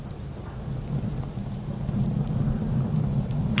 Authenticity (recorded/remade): recorded